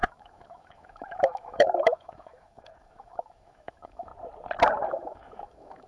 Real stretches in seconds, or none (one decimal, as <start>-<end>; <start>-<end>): 4.1-4.9